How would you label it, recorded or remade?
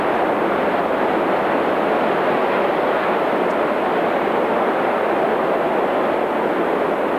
recorded